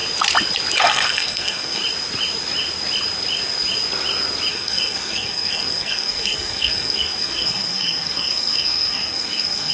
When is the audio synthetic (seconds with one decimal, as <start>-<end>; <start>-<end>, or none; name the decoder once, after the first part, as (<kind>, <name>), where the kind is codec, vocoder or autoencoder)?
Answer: 0.8-1.8 (codec, SNAC); 4.5-9.7